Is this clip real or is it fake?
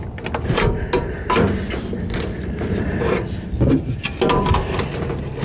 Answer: real